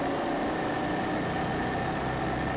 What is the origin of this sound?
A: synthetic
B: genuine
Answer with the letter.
B